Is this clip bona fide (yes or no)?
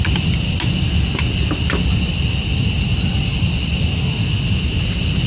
yes